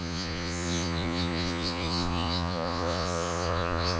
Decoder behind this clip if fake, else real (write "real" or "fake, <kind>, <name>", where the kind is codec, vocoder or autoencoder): fake, vocoder, Vocos